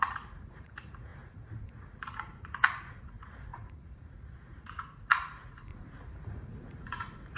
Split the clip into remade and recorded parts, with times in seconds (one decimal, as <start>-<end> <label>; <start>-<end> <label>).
0.0-7.4 remade